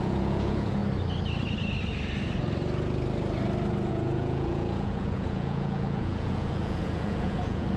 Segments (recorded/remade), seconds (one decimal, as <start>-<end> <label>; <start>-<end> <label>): 0.0-0.8 remade; 0.8-3.9 recorded; 3.9-7.8 remade